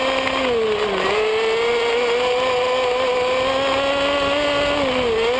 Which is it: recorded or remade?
recorded